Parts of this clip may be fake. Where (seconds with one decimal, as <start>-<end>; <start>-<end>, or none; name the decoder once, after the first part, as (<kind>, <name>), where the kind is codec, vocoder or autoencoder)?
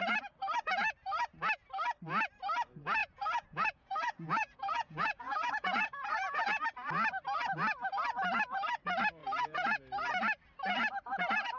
3.0-6.6 (vocoder, Vocos); 9.2-9.8